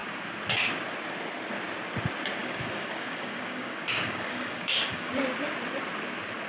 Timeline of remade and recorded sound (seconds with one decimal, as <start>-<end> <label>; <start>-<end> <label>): 0.0-2.4 recorded; 2.4-5.1 remade; 5.1-6.5 recorded